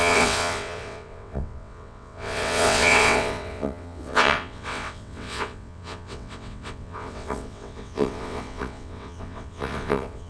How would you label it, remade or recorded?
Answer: remade